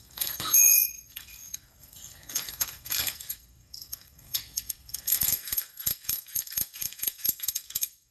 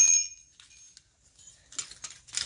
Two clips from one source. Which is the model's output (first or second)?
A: first